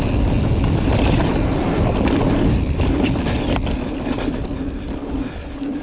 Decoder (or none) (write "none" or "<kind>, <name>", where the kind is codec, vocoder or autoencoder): none